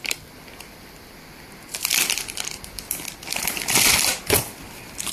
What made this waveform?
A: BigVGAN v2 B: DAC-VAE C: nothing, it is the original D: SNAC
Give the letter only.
A